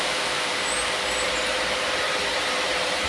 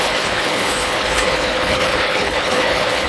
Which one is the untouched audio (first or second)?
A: first